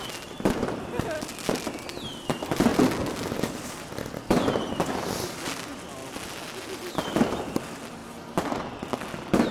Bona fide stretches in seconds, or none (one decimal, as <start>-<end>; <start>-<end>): 2.7-4.3; 6.0-6.9; 8.0-9.5